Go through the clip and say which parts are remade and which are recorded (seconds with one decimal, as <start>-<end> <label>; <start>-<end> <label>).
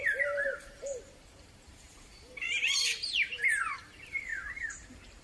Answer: 0.0-2.9 remade; 2.9-3.6 recorded; 3.6-4.3 remade; 4.3-5.2 recorded